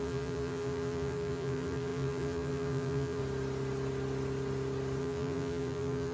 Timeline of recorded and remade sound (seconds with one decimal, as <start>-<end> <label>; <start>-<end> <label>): 0.0-3.2 remade; 3.2-5.0 recorded; 5.0-6.1 remade